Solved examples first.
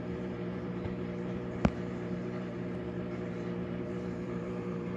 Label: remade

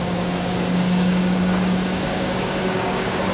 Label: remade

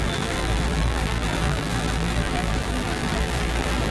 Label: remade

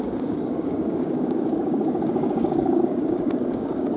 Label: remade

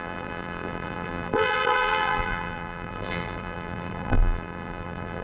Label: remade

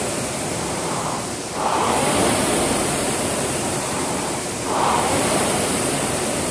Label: remade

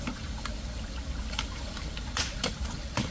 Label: remade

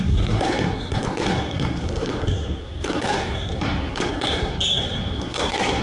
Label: remade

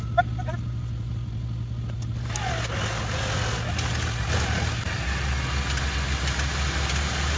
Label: recorded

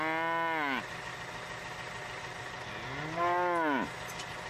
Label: recorded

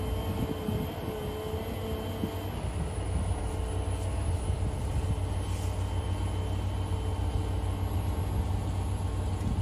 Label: recorded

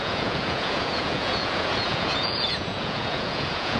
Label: remade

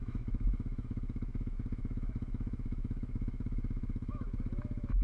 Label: remade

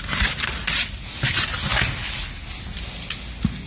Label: recorded